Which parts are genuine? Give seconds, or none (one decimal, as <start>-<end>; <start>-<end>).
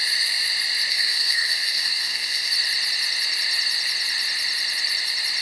0.0-0.9; 2.5-5.4